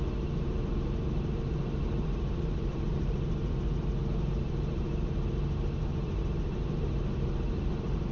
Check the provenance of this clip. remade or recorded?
remade